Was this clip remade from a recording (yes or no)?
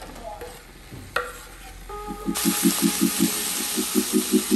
no